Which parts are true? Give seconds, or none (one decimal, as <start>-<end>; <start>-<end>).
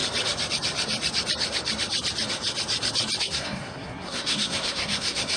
0.0-3.2